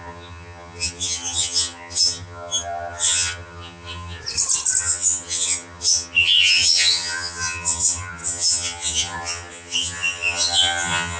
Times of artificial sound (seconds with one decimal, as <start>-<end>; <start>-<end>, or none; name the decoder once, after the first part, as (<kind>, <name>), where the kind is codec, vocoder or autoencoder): 0.0-4.2 (vocoder, HiFi-GAN); 4.8-11.2

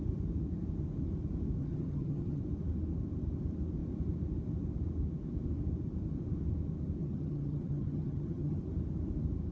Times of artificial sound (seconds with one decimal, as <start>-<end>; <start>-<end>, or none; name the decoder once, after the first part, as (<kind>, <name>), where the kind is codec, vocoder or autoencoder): 1.6-2.4 (vocoder, HiFi-GAN); 7.0-8.6

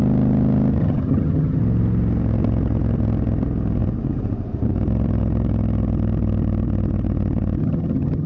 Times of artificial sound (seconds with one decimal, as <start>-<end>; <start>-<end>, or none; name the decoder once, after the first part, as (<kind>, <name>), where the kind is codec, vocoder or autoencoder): 0.8-1.6 (vocoder, HiFi-GAN); 7.6-8.3

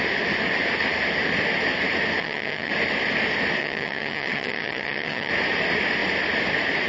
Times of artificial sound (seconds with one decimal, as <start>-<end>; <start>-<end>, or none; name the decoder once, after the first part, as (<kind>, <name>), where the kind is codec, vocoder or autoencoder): 2.2-2.7 (vocoder, HiFi-GAN); 3.6-5.3

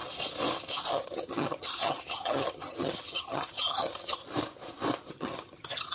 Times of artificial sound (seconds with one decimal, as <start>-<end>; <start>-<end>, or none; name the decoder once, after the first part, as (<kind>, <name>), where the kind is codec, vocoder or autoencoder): 0.9-4.2 (vocoder, HiFi-GAN); 5.1-5.9

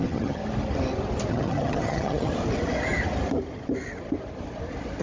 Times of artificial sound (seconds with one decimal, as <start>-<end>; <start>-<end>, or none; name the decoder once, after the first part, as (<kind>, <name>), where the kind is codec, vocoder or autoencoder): 0.0-0.4 (vocoder, HiFi-GAN); 1.3-2.3